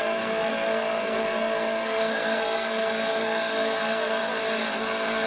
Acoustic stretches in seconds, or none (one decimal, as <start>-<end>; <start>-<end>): 4.2-4.8